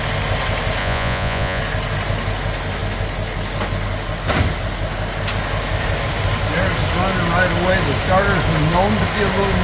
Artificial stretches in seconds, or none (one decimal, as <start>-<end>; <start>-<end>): 0.8-1.6